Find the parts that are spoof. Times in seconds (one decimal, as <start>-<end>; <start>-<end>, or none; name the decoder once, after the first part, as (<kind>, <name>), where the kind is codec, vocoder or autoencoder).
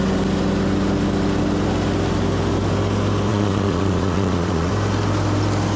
3.3-4.7 (vocoder, Vocos)